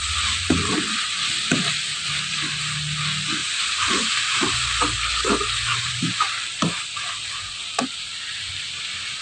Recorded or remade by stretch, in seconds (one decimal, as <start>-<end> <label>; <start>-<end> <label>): 0.0-3.4 recorded; 3.4-4.8 remade; 4.8-5.7 recorded; 5.7-8.5 remade; 8.5-9.2 recorded